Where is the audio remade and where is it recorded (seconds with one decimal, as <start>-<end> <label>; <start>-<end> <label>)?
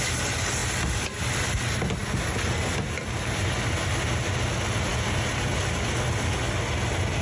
0.0-7.2 recorded